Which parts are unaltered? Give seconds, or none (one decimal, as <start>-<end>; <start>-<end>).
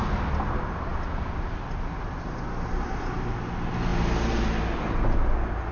0.0-5.7